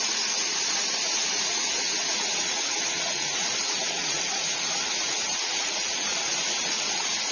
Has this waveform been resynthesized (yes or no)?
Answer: yes